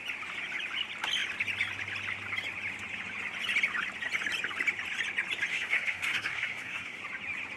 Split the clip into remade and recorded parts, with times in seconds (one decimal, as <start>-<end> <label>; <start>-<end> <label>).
0.0-5.5 recorded; 5.5-7.0 remade; 7.0-7.6 recorded